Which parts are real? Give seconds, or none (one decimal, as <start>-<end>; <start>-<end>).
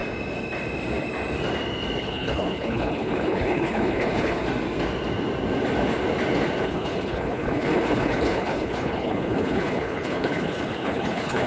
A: 0.0-2.0; 4.4-6.6